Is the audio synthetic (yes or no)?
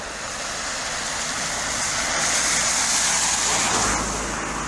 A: no